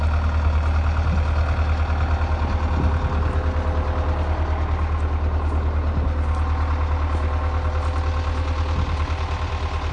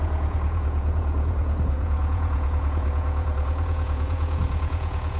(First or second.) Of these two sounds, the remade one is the second